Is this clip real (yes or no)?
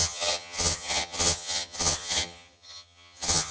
no